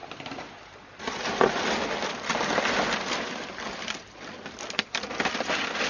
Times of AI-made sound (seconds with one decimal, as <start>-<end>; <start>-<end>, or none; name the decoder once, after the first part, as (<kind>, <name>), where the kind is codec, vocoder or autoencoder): none